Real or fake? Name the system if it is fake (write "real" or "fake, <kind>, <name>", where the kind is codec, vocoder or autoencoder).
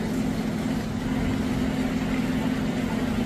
real